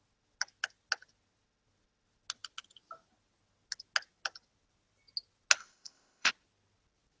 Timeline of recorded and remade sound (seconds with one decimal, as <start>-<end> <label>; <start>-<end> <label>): 0.0-5.6 recorded; 5.6-6.3 remade; 6.3-7.2 recorded